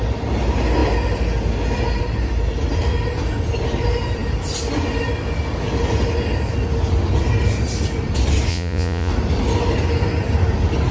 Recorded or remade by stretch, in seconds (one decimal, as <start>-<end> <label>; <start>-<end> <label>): 0.0-8.5 recorded; 8.5-9.1 remade; 9.1-10.9 recorded

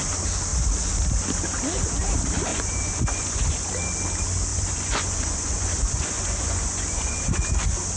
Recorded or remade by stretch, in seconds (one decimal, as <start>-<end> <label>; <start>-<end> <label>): 0.0-2.5 recorded; 2.5-3.7 remade; 3.7-4.5 recorded; 4.5-7.6 remade; 7.6-8.0 recorded

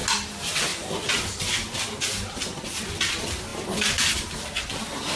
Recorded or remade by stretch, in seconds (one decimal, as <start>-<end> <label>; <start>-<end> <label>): 0.0-5.2 recorded

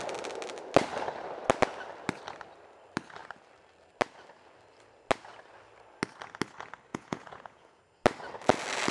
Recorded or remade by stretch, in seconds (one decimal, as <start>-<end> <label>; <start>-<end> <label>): 0.0-6.9 recorded; 6.9-7.8 remade; 7.8-8.9 recorded

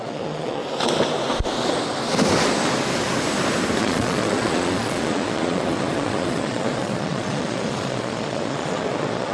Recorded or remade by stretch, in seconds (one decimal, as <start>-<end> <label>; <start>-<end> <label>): 0.0-0.6 remade; 0.6-3.8 recorded; 3.8-9.3 remade

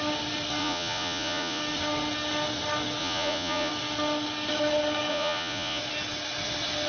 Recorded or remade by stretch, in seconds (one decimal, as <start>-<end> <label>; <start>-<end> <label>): 0.0-0.6 recorded; 0.6-1.6 remade; 1.6-3.0 recorded; 3.0-3.7 remade; 3.7-5.1 recorded; 5.1-5.8 remade; 5.8-6.9 recorded

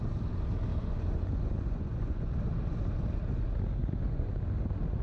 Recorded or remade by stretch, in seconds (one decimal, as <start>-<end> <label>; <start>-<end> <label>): 0.0-0.7 recorded; 0.7-2.3 remade; 2.3-3.8 recorded; 3.8-4.4 remade; 4.4-5.0 recorded

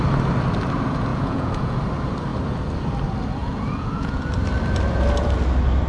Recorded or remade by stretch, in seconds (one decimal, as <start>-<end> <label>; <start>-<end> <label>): 0.0-1.1 recorded; 1.1-1.8 remade; 1.8-3.4 recorded; 3.4-4.3 remade; 4.3-5.9 recorded